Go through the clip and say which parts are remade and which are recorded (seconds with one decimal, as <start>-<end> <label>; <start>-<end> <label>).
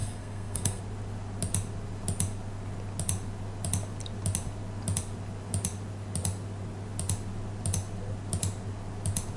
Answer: 0.0-0.8 remade; 0.8-9.4 recorded